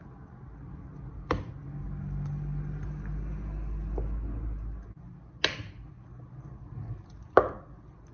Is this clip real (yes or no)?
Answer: yes